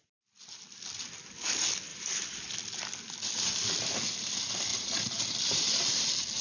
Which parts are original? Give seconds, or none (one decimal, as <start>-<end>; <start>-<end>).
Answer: 0.0-1.9; 2.5-4.7; 5.8-6.4

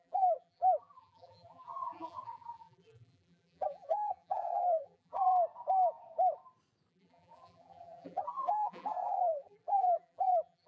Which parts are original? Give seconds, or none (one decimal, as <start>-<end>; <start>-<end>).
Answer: 5.3-6.9

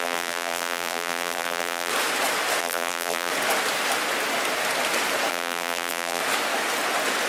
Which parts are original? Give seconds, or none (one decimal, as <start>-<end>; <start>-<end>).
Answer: 1.9-2.6; 3.3-5.3; 6.2-7.3

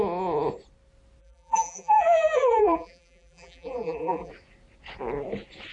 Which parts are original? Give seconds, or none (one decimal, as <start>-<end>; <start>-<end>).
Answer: 0.0-1.2; 4.3-5.7

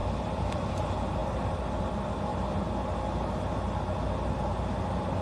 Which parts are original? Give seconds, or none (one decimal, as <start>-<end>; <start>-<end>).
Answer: 0.7-1.2; 1.8-5.2